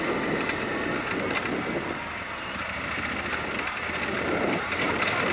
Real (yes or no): yes